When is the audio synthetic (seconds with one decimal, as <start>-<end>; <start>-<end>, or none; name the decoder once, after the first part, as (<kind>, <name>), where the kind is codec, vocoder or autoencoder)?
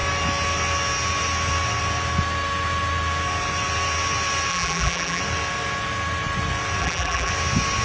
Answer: 4.5-5.2 (vocoder, BigVGAN v2); 6.8-7.3